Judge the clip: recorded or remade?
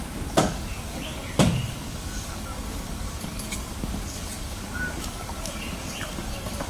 remade